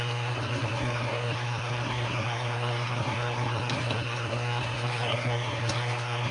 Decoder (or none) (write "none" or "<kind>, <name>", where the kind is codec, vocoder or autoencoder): codec, SNAC